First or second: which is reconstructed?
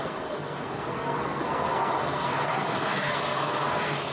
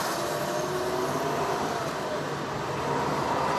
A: first